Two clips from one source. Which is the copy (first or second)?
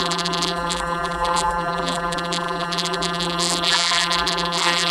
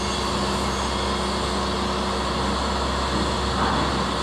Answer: first